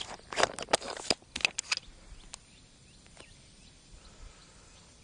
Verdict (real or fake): real